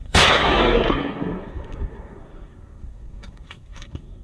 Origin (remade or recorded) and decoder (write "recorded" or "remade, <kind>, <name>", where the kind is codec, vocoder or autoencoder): remade, codec, SNAC